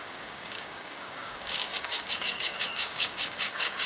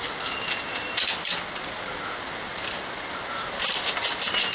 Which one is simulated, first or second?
first